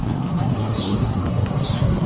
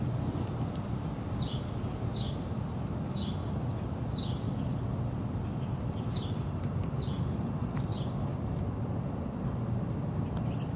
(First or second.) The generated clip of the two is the first